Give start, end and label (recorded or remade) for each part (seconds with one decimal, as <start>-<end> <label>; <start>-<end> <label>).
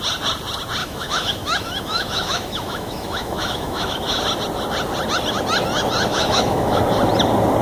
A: 0.0-0.8 recorded; 0.8-4.2 remade; 4.2-6.1 recorded; 6.1-6.8 remade; 6.8-7.6 recorded